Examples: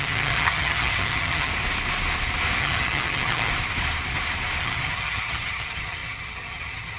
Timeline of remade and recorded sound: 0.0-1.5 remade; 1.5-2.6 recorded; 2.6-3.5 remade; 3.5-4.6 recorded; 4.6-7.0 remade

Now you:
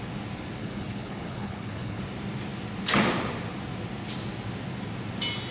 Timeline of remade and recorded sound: 0.0-0.6 recorded; 0.6-2.0 remade; 2.0-5.5 recorded

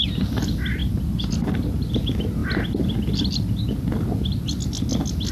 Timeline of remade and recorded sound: 0.0-0.8 recorded; 0.8-1.3 remade; 1.3-5.3 recorded

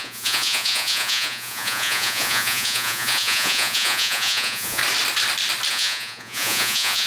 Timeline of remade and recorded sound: 0.0-4.8 remade; 4.8-5.7 recorded; 5.7-7.1 remade

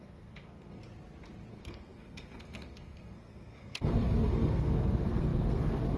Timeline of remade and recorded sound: 0.0-0.8 remade; 0.8-1.5 recorded; 1.5-6.0 remade

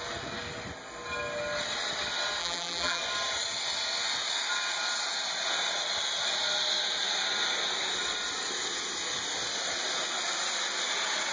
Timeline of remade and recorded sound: 0.0-2.4 recorded; 2.4-3.0 remade; 3.0-11.3 recorded